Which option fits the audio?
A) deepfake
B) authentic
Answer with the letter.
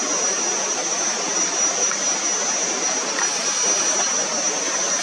B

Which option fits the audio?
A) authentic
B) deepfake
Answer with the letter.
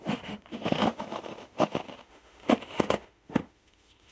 B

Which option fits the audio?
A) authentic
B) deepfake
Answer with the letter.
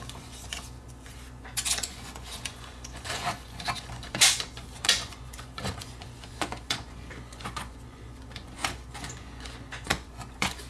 B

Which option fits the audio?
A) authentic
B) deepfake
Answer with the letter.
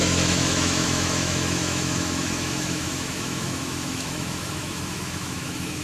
B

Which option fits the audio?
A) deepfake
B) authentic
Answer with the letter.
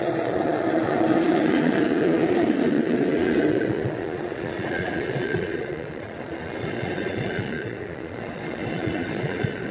A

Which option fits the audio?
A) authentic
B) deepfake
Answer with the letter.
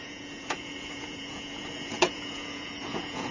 B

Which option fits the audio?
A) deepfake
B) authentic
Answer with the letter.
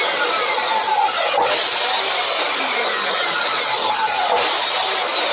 B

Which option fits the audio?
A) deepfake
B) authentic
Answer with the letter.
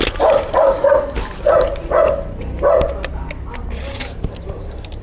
B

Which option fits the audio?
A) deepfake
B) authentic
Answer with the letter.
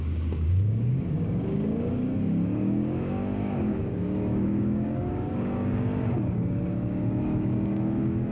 A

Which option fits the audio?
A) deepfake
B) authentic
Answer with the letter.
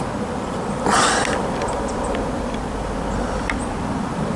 A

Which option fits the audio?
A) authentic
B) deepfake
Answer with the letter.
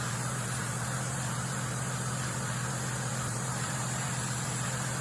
B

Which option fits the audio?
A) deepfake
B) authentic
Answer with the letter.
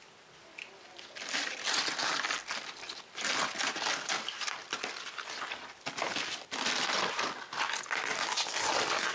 B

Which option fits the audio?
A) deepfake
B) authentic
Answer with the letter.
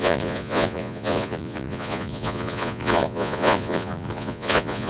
A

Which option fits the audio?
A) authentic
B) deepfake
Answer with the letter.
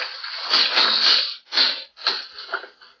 A